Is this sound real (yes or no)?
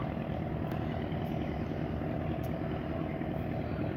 yes